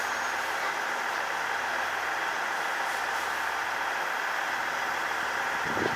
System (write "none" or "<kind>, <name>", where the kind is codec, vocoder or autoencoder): none